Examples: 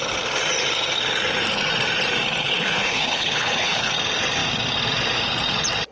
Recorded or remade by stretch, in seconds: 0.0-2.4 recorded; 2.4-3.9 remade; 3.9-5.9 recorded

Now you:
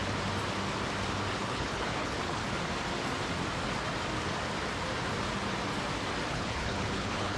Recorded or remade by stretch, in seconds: 0.0-1.4 recorded; 1.4-2.4 remade; 2.4-6.3 recorded; 6.3-7.4 remade

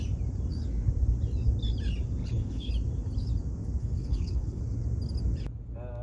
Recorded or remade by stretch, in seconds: 0.0-2.2 recorded; 2.2-2.7 remade; 2.7-3.8 recorded; 3.8-4.6 remade; 4.6-6.0 recorded

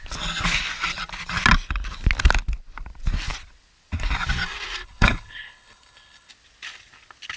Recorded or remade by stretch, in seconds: 0.0-4.8 recorded; 4.8-6.3 remade; 6.3-7.4 recorded

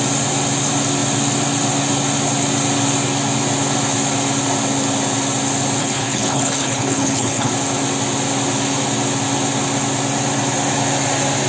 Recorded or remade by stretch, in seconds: 0.0-5.8 recorded; 5.8-7.5 remade; 7.5-11.5 recorded

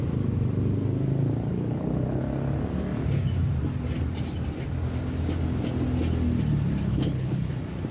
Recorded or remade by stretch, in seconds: 0.0-1.5 recorded; 1.5-2.2 remade; 2.2-6.9 recorded; 6.9-7.5 remade; 7.5-7.9 recorded

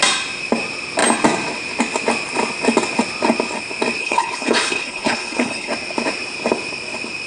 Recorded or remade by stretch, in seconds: 0.0-4.0 recorded; 4.0-5.7 remade; 5.7-7.3 recorded